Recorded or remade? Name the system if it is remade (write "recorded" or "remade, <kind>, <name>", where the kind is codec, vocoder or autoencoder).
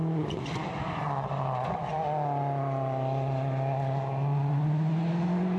recorded